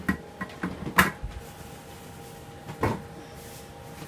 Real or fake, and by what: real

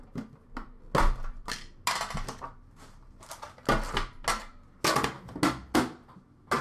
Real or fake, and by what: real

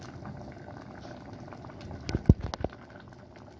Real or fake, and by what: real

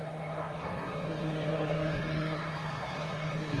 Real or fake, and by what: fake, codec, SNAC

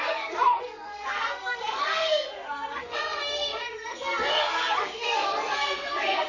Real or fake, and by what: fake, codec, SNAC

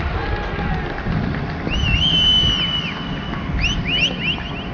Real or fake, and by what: real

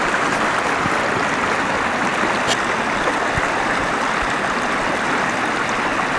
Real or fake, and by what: real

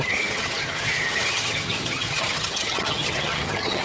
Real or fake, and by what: fake, vocoder, HiFi-GAN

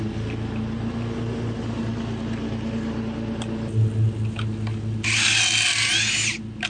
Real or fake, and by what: real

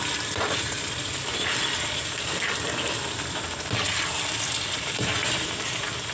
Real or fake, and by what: real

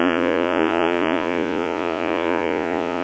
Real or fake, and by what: fake, vocoder, Vocos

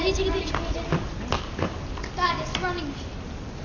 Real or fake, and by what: real